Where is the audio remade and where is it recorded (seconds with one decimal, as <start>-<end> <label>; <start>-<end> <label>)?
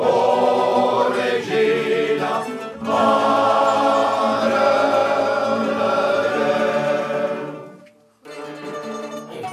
0.0-0.7 recorded; 0.7-1.2 remade; 1.2-9.5 recorded